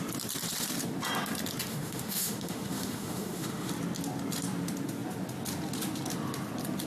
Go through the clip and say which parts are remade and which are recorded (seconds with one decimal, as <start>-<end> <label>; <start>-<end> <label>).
0.0-1.7 recorded; 1.7-3.7 remade; 3.7-6.9 recorded